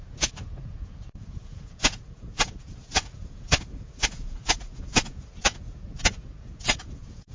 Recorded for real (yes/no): no